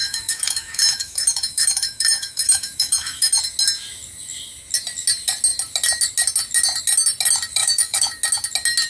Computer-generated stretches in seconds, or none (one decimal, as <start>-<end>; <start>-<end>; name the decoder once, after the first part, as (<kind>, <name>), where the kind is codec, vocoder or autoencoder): 0.0-3.4 (autoencoder, DAC-VAE); 7.6-8.1

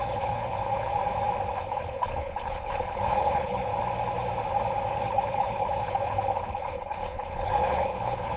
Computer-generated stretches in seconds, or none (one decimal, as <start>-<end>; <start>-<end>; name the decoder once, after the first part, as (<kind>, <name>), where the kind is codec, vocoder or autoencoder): 0.0-0.9 (codec, HILCodec); 1.5-3.7; 4.9-8.4

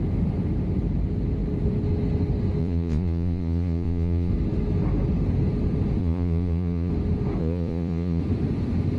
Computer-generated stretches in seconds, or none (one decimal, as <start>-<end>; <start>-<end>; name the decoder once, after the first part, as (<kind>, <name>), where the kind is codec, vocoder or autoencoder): 2.6-4.3 (vocoder, Vocos); 6.0-6.9; 7.4-8.2

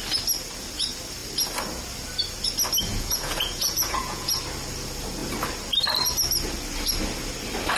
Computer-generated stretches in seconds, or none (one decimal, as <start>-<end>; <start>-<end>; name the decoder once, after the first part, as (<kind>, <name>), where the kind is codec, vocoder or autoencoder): 2.9-4.4 (vocoder, Vocos)

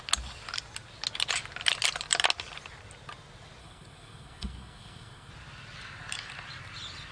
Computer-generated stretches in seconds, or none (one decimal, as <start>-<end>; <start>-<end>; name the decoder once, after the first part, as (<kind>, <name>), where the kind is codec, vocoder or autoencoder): 3.6-5.3 (codec, SNAC)

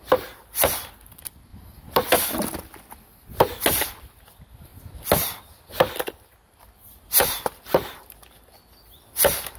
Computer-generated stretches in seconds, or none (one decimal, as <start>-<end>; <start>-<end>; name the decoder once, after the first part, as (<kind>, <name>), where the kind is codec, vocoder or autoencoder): none

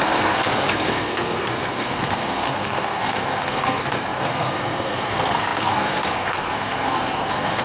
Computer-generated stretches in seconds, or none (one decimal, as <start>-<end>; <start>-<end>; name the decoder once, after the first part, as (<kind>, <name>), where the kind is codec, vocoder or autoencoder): 0.0-7.6 (codec, SNAC)